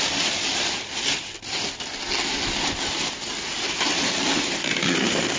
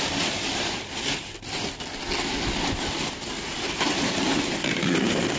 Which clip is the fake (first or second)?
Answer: second